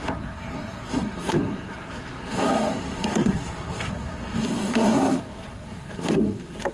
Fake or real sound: fake